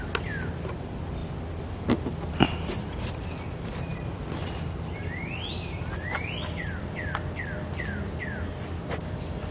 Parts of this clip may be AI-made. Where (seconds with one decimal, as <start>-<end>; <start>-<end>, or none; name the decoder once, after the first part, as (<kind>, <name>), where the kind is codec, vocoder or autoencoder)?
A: none